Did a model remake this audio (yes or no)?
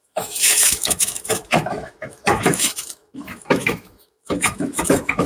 yes